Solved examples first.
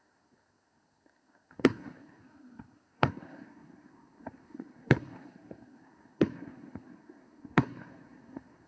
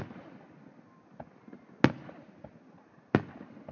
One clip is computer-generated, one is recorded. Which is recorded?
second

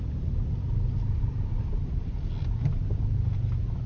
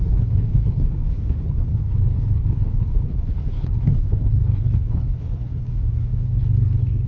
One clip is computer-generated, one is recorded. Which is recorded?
first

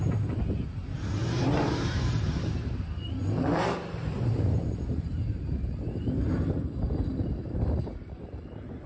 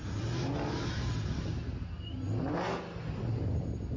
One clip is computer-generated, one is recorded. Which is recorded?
second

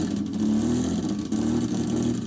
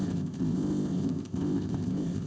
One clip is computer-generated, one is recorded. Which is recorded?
first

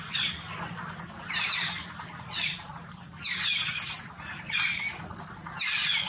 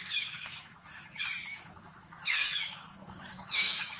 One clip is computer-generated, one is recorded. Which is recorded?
first